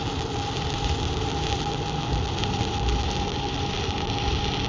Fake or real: real